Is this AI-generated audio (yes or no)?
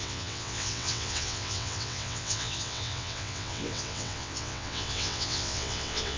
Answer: yes